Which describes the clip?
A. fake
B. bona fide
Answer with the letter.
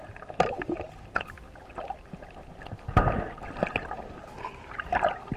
B